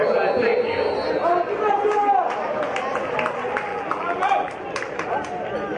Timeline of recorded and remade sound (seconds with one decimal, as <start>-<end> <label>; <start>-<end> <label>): 0.0-3.7 recorded; 3.7-4.5 remade; 4.5-5.8 recorded